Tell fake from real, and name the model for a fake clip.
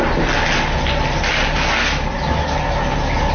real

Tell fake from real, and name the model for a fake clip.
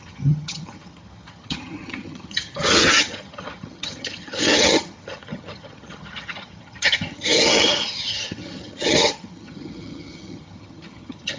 fake, vocoder, HiFi-GAN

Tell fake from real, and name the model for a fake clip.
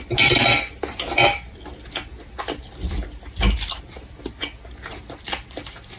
real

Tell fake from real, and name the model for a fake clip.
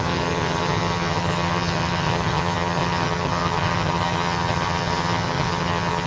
fake, vocoder, HiFi-GAN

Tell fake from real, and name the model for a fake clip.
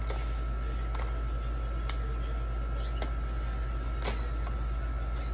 real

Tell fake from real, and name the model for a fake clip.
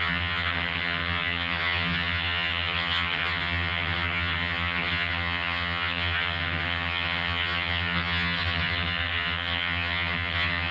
fake, vocoder, HiFi-GAN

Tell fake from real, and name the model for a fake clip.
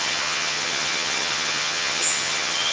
fake, vocoder, HiFi-GAN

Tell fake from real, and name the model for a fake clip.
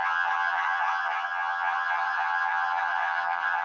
fake, vocoder, HiFi-GAN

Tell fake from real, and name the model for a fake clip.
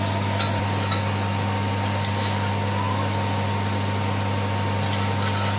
real